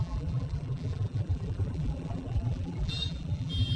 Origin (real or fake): fake